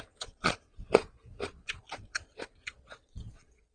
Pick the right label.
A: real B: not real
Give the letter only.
B